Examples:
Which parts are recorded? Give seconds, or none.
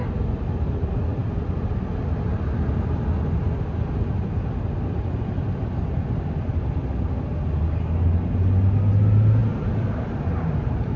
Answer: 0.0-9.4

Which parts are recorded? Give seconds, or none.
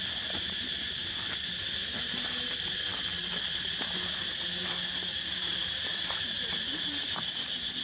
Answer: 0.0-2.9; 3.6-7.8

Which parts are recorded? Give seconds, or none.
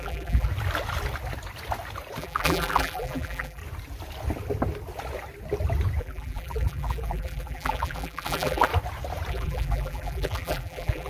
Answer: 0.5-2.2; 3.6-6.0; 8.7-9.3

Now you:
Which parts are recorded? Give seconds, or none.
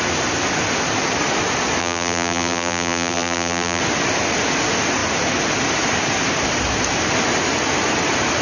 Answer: 0.0-1.8; 3.8-8.4